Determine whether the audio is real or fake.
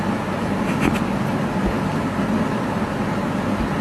real